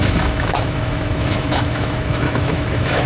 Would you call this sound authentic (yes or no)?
no